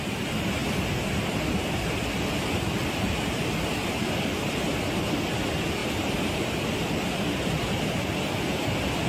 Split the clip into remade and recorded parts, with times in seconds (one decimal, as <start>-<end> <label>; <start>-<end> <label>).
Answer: 0.0-5.8 recorded; 5.8-8.1 remade; 8.1-9.1 recorded